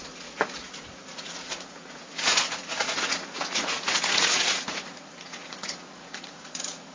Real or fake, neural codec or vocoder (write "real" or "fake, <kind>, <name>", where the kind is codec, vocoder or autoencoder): fake, vocoder, Vocos